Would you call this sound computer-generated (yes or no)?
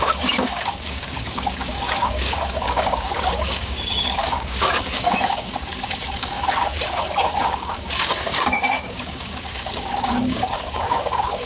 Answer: yes